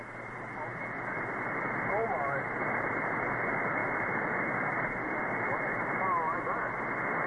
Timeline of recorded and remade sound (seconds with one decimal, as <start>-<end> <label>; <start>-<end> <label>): 0.0-0.7 remade; 0.7-2.1 recorded; 2.1-3.8 remade; 3.8-7.3 recorded